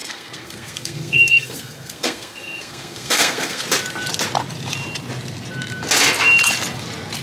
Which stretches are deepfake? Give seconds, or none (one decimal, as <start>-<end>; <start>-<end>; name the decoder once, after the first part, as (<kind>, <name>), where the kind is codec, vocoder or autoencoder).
0.0-3.6 (codec, SNAC)